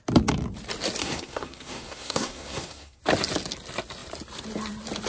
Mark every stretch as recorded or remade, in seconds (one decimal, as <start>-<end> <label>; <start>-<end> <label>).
0.0-1.0 recorded; 1.0-3.0 remade; 3.0-5.1 recorded

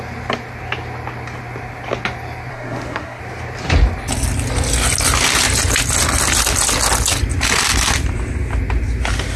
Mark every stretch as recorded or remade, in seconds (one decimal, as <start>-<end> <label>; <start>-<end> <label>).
0.0-2.5 recorded; 2.5-3.2 remade; 3.2-9.4 recorded